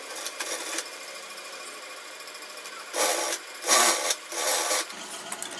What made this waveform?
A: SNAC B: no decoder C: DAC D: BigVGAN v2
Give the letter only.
B